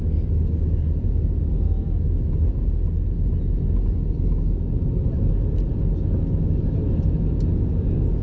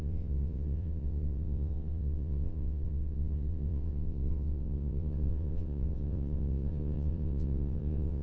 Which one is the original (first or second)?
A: first